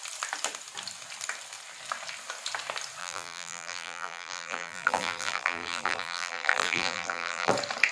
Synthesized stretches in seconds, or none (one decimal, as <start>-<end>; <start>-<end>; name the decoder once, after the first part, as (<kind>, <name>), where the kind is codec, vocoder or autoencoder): 3.0-7.5 (vocoder, BigVGAN v2)

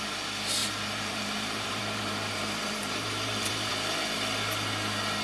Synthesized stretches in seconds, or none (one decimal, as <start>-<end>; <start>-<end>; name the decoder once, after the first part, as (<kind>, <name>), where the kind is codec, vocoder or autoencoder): 0.6-3.7 (vocoder, BigVGAN v2)

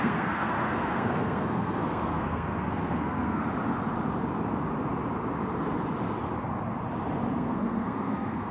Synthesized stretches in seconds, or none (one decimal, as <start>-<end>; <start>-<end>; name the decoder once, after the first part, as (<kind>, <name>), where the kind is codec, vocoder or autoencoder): 0.0-3.4 (codec, SNAC); 7.3-8.5

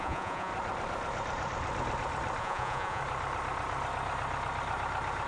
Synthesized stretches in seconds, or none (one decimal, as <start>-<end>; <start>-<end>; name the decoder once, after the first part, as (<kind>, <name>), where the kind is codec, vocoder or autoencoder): 0.0-0.5 (vocoder, Vocos); 2.4-3.0

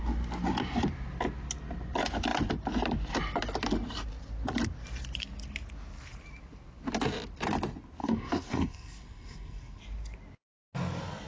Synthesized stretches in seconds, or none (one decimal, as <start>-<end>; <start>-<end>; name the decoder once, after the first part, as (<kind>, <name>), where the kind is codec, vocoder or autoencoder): 8.0-9.8 (codec, SNAC)

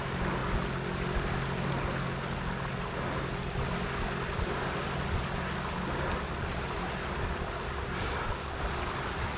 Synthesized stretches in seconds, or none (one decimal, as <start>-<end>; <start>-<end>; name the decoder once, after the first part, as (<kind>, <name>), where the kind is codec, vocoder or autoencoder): none

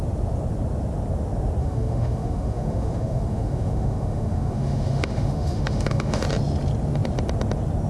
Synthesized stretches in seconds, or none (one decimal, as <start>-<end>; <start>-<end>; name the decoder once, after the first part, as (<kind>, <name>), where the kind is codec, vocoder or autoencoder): 1.6-6.2 (autoencoder, DAC-VAE)